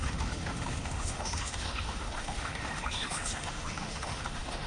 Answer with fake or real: fake